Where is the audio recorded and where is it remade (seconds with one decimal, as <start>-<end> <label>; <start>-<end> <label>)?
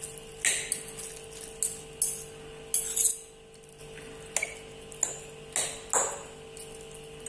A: 0.0-7.3 recorded